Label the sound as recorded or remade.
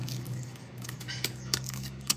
remade